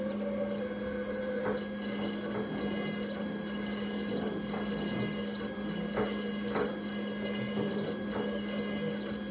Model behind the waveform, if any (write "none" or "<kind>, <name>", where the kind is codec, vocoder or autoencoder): none